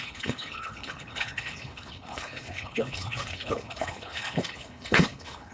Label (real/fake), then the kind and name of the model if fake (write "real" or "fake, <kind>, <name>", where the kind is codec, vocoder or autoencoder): fake, codec, HILCodec